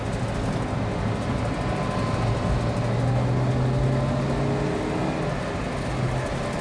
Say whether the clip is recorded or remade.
recorded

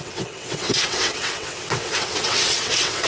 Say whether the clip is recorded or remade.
remade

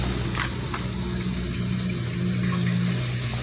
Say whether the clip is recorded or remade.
recorded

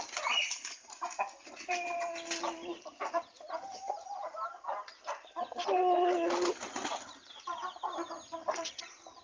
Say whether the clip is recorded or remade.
recorded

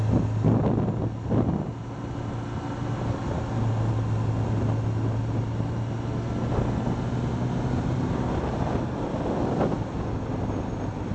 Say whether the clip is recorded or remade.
recorded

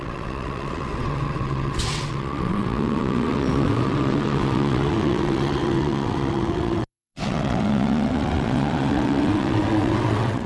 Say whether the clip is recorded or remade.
remade